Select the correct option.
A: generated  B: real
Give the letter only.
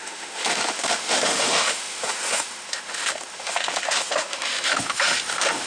A